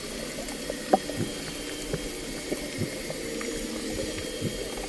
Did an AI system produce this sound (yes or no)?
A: no